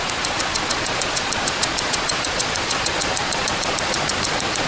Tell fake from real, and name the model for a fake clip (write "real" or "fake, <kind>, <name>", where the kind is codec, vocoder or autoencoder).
fake, vocoder, Vocos